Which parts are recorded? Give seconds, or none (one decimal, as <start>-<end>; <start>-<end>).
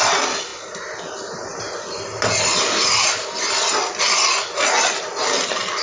0.0-5.8